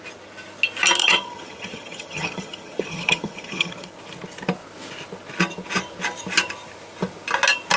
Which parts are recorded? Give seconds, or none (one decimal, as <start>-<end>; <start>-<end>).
0.0-1.0; 3.9-7.8